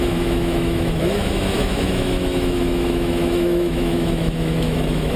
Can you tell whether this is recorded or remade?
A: remade